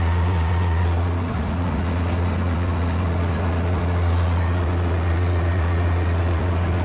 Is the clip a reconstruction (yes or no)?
yes